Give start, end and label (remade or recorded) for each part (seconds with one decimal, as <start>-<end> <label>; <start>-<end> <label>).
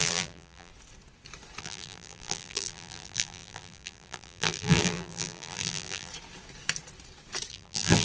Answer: 0.0-0.7 remade; 0.7-1.6 recorded; 1.6-6.1 remade; 6.1-7.5 recorded; 7.5-8.0 remade